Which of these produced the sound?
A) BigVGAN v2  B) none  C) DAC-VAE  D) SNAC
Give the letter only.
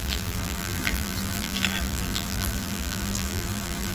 A